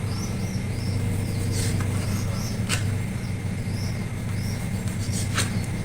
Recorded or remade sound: recorded